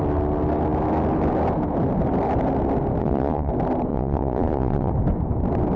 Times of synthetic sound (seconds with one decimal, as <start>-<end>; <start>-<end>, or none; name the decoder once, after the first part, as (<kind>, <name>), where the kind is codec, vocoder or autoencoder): 3.0-3.5 (vocoder, Vocos); 3.9-4.9

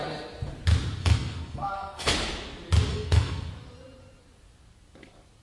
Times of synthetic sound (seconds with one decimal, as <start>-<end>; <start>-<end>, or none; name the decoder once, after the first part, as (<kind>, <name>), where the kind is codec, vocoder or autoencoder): 1.0-2.1 (codec, SNAC); 2.9-3.5

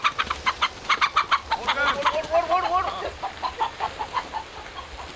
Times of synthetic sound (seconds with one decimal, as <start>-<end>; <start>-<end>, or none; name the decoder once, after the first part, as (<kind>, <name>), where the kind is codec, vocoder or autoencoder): 1.7-4.8 (vocoder, BigVGAN v2)

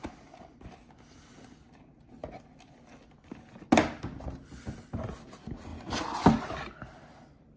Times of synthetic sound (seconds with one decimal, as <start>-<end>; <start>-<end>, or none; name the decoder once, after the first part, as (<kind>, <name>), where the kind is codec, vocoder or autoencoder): none

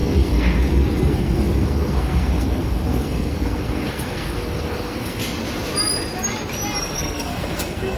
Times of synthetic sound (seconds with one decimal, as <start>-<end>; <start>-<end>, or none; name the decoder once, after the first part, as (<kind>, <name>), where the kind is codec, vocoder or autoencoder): 0.0-5.2 (codec, SNAC); 6.8-8.0